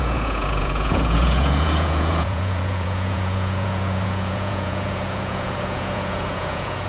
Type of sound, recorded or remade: remade